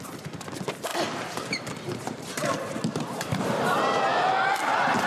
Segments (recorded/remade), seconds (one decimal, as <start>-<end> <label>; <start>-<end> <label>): 0.0-0.9 recorded; 0.9-4.0 remade; 4.0-5.1 recorded

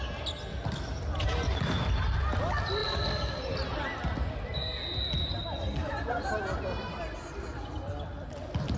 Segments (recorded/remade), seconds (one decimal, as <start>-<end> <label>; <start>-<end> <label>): 0.0-8.8 recorded

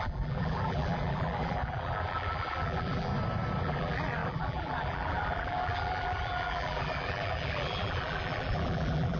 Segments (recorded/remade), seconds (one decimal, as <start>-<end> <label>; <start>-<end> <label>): 0.0-3.1 remade; 3.1-3.6 recorded; 3.6-9.2 remade